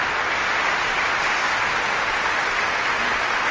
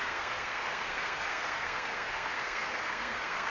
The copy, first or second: second